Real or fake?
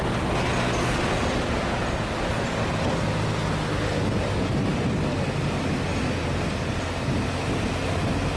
real